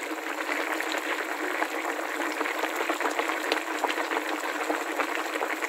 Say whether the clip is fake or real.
fake